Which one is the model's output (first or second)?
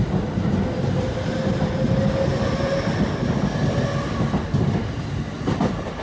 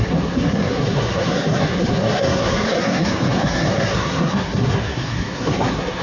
second